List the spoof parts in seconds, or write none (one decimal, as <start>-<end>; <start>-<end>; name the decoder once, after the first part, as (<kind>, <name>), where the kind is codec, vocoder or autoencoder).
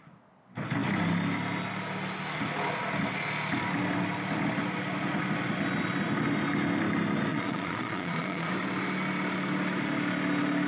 7.3-8.5 (vocoder, Vocos)